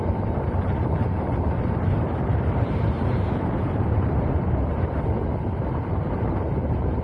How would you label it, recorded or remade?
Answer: remade